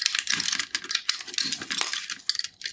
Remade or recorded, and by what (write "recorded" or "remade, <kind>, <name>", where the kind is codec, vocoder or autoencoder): recorded